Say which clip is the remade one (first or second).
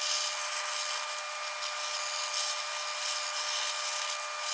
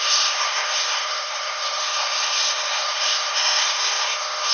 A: second